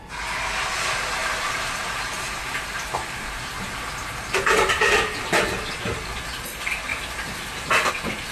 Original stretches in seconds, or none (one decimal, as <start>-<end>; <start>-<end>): 0.0-1.2; 5.4-6.9; 7.9-8.3